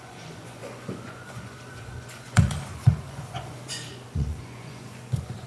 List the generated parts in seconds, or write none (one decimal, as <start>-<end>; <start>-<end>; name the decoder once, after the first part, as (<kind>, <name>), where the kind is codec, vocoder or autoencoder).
0.0-5.5 (vocoder, Vocos)